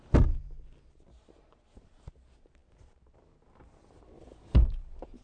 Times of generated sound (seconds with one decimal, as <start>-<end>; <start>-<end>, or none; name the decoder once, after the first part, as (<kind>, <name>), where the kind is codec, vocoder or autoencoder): none